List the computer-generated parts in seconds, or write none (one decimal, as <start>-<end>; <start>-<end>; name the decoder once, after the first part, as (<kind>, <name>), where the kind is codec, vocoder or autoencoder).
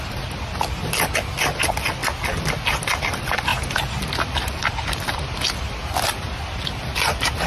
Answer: 3.5-5.7 (vocoder, BigVGAN v2)